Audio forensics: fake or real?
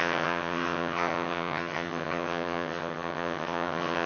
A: fake